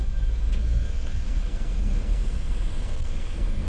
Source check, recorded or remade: remade